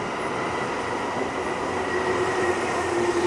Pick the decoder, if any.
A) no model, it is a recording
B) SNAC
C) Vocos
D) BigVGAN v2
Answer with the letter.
A